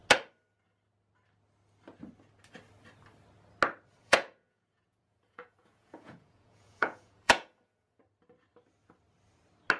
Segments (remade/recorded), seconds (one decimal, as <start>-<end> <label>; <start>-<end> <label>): 0.0-4.0 recorded; 4.0-8.0 remade; 8.0-9.8 recorded

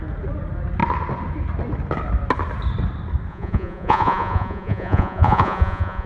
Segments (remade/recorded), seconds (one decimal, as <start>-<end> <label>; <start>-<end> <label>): 0.0-3.3 recorded; 3.3-6.1 remade

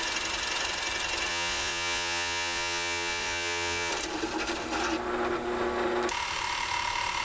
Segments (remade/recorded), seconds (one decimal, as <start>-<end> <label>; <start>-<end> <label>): 0.0-1.3 recorded; 1.3-3.9 remade; 3.9-7.2 recorded

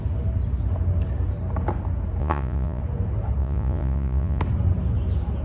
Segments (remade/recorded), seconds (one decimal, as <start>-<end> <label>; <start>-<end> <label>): 0.0-2.2 recorded; 2.2-2.8 remade; 2.8-3.4 recorded; 3.4-4.4 remade; 4.4-5.4 recorded

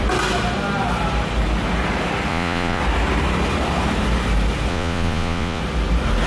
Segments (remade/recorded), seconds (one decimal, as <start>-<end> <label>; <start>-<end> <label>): 0.0-2.3 recorded; 2.3-2.8 remade; 2.8-4.7 recorded; 4.7-5.6 remade; 5.6-6.3 recorded

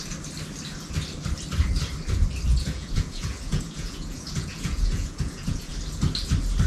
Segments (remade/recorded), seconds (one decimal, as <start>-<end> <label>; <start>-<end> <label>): 0.0-2.5 recorded; 2.5-5.7 remade; 5.7-6.7 recorded

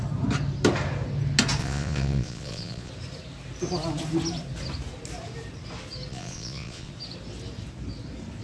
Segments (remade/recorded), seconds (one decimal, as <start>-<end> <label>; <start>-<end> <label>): 0.0-1.6 recorded; 1.6-2.9 remade; 2.9-6.1 recorded; 6.1-6.9 remade; 6.9-8.4 recorded